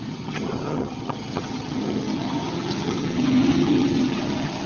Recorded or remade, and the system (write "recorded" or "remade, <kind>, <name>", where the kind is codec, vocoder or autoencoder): remade, vocoder, HiFi-GAN